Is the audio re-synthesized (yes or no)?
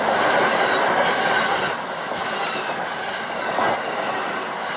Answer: no